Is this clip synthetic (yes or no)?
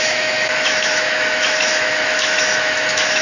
yes